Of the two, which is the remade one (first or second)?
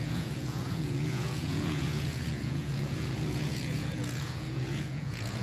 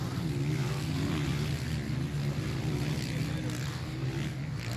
first